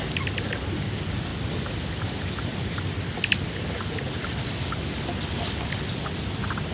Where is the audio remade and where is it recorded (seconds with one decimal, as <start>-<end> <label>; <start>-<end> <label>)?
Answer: 0.0-6.7 recorded